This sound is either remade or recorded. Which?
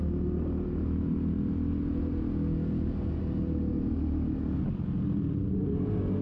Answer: recorded